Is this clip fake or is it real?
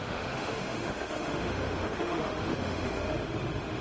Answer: fake